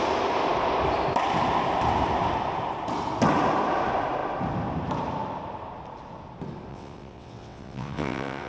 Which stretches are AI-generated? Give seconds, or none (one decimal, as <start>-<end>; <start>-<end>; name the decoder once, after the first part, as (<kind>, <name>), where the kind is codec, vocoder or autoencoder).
6.7-8.5 (vocoder, WaveNeXt)